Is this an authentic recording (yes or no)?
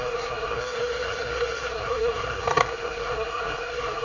no